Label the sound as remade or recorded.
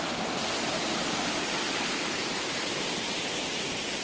recorded